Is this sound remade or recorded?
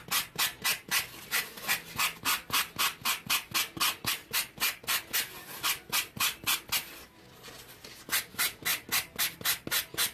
recorded